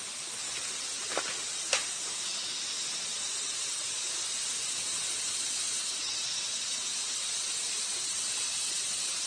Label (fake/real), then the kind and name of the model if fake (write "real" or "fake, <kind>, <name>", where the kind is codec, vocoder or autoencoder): real